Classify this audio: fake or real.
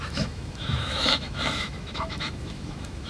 fake